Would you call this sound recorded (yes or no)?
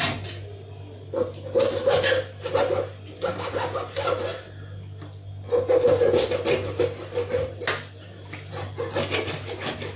yes